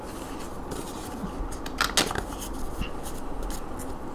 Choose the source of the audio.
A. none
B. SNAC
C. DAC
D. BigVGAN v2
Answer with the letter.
A